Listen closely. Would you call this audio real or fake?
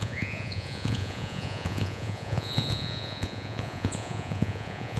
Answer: fake